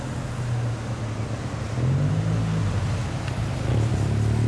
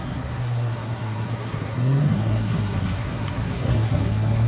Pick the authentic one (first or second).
first